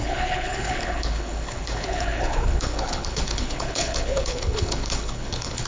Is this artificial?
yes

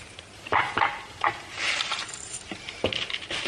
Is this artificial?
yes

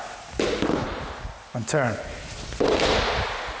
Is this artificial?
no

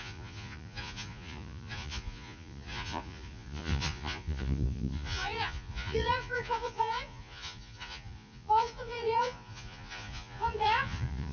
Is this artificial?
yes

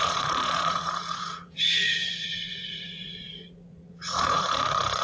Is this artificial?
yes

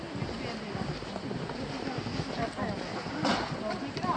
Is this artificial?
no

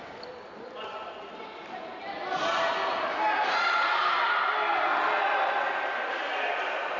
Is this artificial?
no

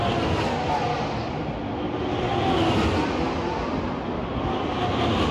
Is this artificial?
no